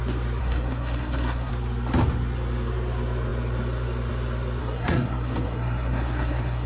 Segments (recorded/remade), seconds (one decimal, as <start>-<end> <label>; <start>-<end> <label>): 0.0-0.4 recorded; 0.4-1.5 remade; 1.5-4.6 recorded; 4.6-6.7 remade